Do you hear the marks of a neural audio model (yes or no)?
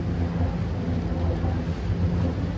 no